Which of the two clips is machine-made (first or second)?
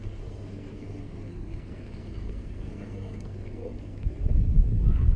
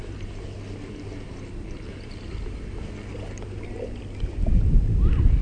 first